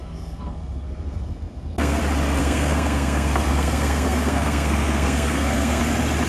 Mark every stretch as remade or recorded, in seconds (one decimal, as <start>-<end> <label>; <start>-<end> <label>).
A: 0.0-2.0 remade; 2.0-2.4 recorded; 2.4-5.8 remade; 5.8-6.3 recorded